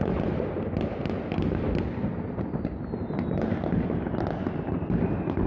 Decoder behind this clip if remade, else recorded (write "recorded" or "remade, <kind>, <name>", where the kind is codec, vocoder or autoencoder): recorded